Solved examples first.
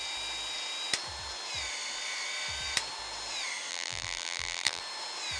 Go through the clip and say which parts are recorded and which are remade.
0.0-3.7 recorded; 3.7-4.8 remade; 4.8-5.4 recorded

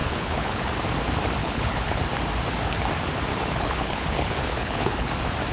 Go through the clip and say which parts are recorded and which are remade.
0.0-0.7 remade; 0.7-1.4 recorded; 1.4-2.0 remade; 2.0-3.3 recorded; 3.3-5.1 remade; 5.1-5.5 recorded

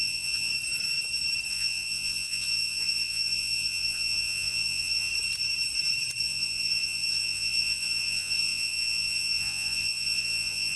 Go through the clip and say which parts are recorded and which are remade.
0.0-0.5 remade; 0.5-1.5 recorded; 1.5-5.1 remade; 5.1-6.2 recorded; 6.2-10.8 remade

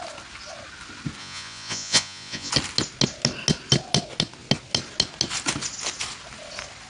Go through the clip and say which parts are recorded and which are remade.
0.0-1.2 recorded; 1.2-2.5 remade; 2.5-6.9 recorded

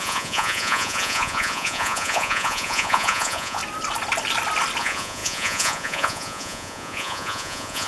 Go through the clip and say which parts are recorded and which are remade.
0.0-3.6 remade; 3.6-4.8 recorded; 4.8-7.9 remade

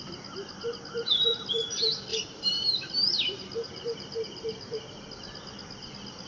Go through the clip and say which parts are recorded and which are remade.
0.0-2.1 recorded; 2.1-5.0 remade; 5.0-6.3 recorded

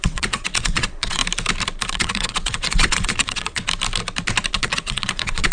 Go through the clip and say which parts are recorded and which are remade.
0.0-1.2 remade; 1.2-1.9 recorded; 1.9-3.6 remade; 3.6-4.5 recorded; 4.5-5.5 remade